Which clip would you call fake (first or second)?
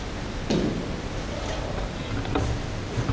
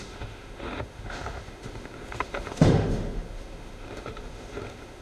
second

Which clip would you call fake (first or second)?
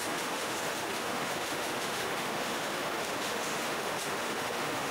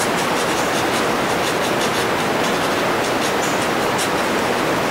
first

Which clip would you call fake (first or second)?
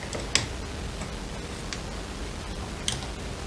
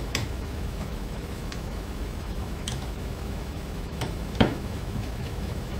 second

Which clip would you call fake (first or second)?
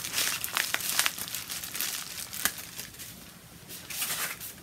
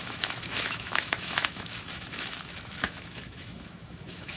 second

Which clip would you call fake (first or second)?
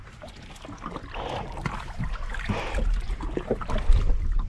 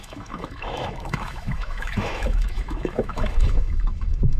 second